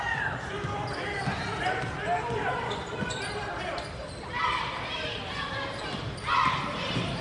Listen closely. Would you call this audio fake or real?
fake